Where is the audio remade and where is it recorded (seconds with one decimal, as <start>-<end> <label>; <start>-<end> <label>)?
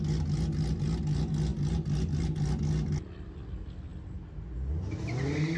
0.0-5.6 recorded